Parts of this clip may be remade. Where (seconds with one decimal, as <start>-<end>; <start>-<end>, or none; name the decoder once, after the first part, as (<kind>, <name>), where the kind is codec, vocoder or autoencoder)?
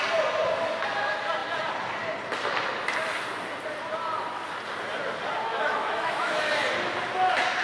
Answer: 5.5-6.5 (autoencoder, DAC-VAE)